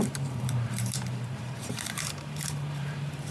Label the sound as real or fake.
fake